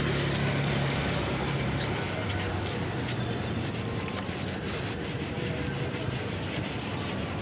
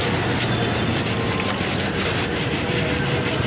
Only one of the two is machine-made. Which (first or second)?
first